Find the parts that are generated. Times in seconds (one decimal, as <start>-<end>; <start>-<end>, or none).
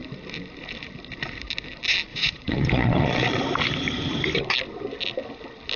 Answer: 2.1-3.4